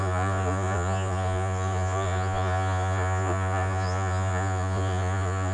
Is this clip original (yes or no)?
no